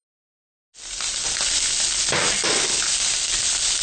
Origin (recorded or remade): recorded